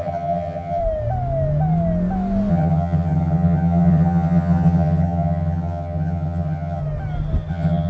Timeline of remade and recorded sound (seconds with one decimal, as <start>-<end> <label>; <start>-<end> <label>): 0.0-0.8 remade; 0.8-2.5 recorded; 2.5-6.8 remade; 6.8-7.5 recorded; 7.5-7.9 remade